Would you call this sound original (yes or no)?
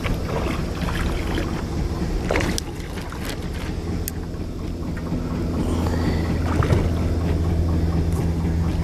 yes